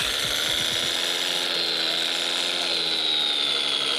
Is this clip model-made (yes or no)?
no